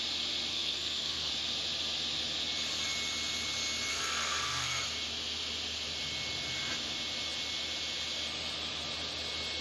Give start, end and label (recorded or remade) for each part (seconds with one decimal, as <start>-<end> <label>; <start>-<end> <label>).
0.0-0.5 recorded; 0.5-1.3 remade; 1.3-3.9 recorded; 3.9-4.8 remade; 4.8-9.6 recorded